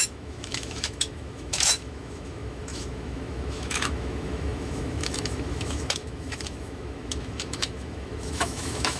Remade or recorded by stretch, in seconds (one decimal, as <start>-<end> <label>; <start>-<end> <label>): 0.0-9.0 remade